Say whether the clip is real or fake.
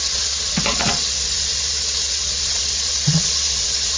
fake